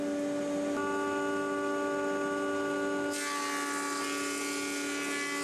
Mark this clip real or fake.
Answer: real